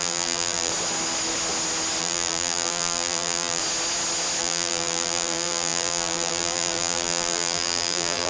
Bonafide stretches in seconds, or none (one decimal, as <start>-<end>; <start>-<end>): 0.7-2.0; 3.6-4.4